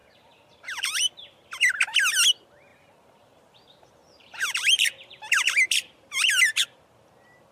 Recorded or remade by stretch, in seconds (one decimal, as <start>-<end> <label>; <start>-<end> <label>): 0.0-1.1 remade; 1.1-2.7 recorded; 2.7-7.5 remade